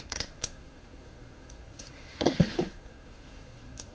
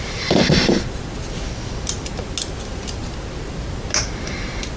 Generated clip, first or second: first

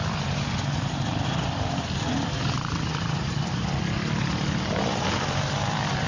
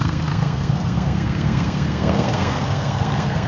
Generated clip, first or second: second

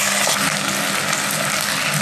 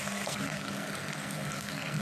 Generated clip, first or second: second